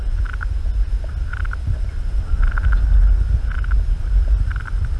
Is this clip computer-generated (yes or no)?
no